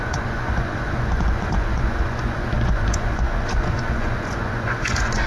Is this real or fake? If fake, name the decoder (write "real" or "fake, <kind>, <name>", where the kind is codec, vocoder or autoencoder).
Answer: fake, vocoder, Vocos